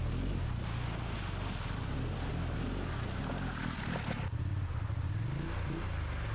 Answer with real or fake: real